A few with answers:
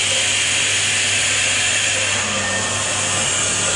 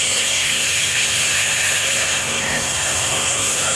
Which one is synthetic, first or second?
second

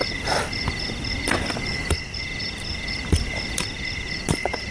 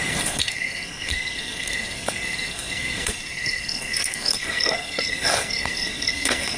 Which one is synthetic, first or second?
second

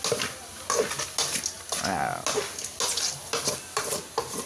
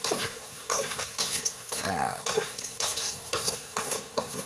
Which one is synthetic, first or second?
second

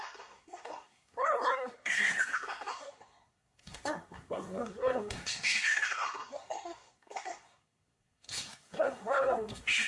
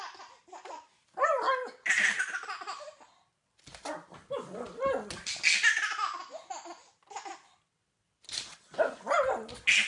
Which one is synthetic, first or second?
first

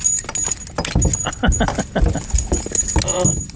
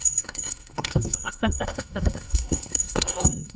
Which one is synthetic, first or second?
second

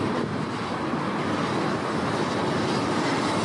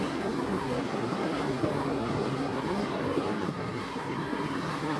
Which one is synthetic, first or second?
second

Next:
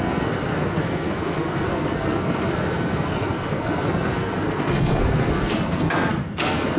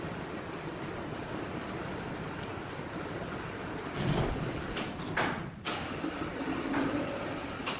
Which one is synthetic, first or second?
first